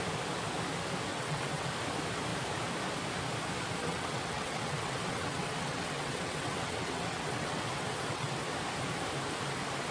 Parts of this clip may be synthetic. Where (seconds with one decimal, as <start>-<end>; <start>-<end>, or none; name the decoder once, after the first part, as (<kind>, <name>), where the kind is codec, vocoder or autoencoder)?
1.1-1.7 (vocoder, WaveNeXt); 3.8-8.5